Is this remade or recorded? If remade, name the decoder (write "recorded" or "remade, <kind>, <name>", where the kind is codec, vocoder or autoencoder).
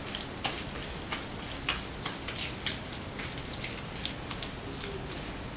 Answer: recorded